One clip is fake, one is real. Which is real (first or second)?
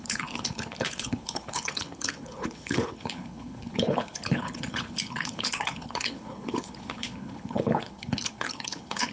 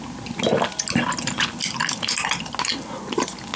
second